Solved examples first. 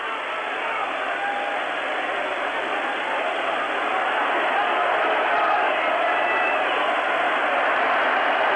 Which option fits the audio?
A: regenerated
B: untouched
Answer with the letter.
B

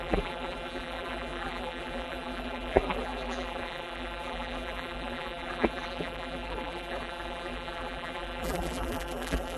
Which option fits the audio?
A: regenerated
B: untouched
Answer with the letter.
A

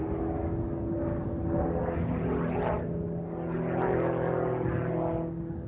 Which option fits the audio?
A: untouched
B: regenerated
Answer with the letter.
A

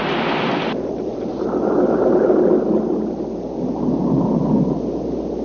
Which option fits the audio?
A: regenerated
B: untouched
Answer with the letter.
B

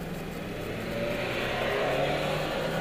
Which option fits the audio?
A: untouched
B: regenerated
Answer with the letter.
A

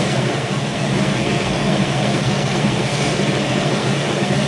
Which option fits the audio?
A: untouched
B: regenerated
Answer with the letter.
B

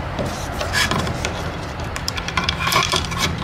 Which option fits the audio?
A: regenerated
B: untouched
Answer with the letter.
A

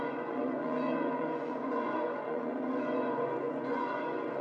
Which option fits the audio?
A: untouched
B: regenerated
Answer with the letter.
B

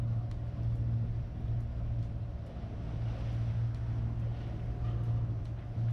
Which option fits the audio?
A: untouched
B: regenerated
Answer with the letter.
A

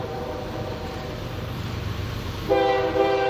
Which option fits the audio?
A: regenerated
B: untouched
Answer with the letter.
A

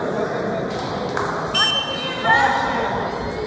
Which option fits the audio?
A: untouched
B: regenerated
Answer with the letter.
A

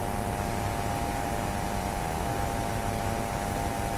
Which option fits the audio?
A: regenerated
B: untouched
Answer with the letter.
B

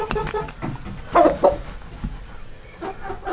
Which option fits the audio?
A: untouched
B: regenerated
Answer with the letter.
A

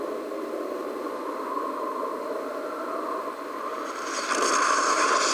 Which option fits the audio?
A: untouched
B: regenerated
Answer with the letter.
A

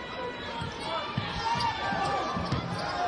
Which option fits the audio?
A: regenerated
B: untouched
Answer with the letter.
B